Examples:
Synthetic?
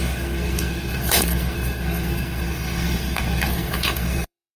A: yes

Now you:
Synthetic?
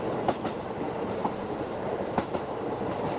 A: no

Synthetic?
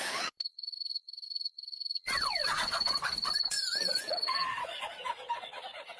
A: yes